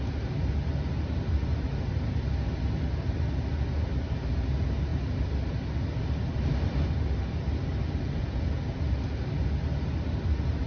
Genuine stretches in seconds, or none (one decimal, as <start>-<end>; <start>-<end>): 0.0-10.7

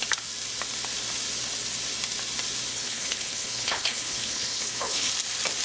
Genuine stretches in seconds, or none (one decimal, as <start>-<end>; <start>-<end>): 0.0-2.7; 5.1-5.6

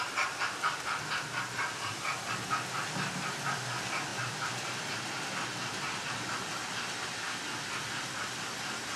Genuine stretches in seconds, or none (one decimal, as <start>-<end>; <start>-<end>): 0.0-9.0

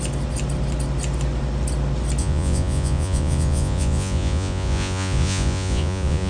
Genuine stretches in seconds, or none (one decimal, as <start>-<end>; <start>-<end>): 0.0-2.2

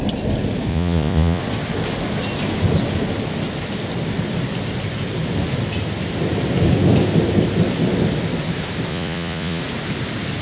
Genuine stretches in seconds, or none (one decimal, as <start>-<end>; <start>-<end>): 0.0-0.7; 1.4-8.9; 9.6-10.4

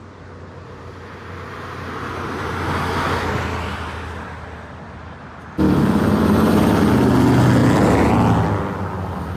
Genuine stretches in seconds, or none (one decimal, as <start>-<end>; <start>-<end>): 0.0-7.6; 8.1-9.4